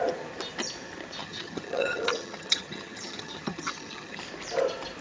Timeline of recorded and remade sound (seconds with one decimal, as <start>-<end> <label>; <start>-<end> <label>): 0.0-1.2 recorded; 1.2-4.2 remade; 4.2-5.0 recorded

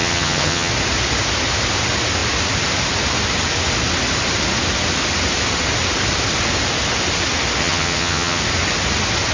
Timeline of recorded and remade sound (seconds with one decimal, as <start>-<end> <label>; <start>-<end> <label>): 0.0-0.7 remade; 0.7-7.6 recorded; 7.6-8.4 remade; 8.4-9.3 recorded

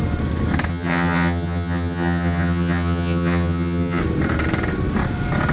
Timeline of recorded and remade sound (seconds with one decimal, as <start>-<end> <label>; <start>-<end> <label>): 0.0-0.7 recorded; 0.7-4.0 remade; 4.0-5.5 recorded